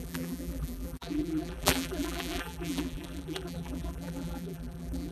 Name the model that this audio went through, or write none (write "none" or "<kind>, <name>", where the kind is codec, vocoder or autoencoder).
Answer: vocoder, BigVGAN v2